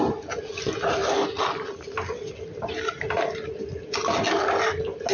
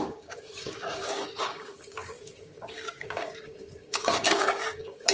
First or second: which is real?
first